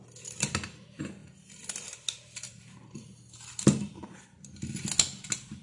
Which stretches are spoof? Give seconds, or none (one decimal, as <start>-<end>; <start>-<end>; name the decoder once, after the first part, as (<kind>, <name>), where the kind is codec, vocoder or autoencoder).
none